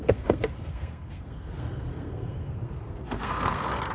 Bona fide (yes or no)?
no